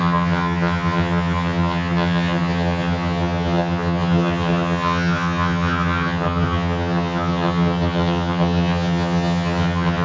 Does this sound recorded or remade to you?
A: remade